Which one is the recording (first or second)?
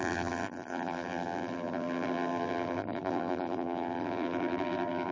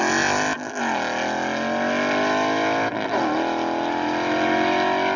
second